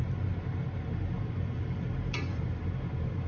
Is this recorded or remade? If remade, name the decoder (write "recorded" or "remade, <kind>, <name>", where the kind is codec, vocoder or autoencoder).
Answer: remade, vocoder, BigVGAN v2